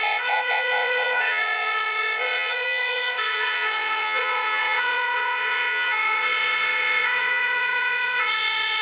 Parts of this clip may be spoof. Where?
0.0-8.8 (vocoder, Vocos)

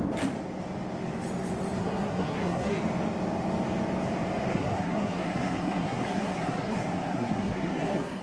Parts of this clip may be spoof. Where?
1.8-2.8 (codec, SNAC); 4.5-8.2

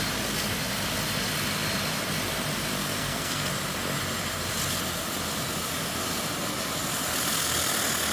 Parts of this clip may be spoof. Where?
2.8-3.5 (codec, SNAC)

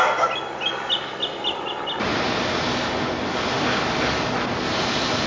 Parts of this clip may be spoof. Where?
none

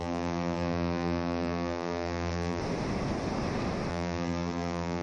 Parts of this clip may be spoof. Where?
0.0-2.6 (vocoder, BigVGAN v2); 3.9-5.0